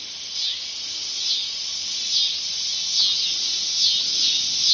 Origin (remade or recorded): recorded